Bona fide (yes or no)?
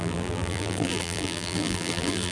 no